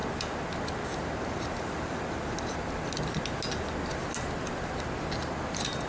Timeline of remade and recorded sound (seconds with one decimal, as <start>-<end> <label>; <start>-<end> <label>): 0.0-5.9 recorded